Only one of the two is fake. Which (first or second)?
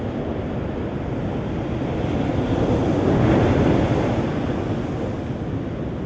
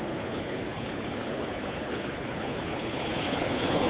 second